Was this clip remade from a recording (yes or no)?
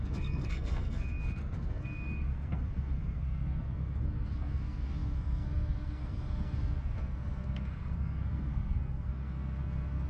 yes